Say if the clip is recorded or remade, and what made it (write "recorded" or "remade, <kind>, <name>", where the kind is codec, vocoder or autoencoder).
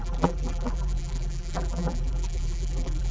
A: remade, vocoder, BigVGAN v2